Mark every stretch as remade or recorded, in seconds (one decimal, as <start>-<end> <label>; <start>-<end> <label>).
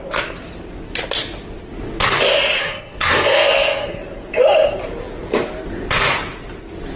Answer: 0.0-2.6 recorded; 2.6-4.0 remade; 4.0-7.0 recorded